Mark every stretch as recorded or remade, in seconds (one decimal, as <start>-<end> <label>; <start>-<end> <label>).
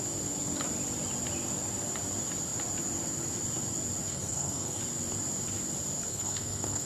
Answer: 0.0-4.1 recorded; 4.1-4.8 remade; 4.8-6.1 recorded; 6.1-6.9 remade